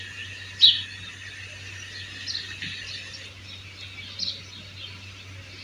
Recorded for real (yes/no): yes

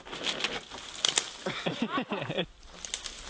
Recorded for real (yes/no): yes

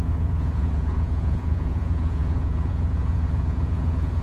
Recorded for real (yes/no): no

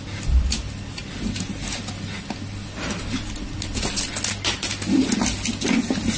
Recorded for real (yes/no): yes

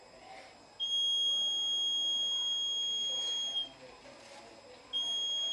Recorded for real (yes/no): yes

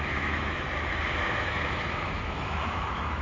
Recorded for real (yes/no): no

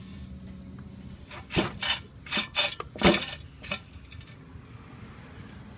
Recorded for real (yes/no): yes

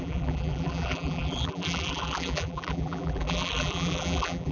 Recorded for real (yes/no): no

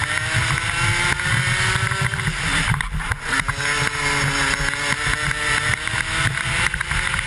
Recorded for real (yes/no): yes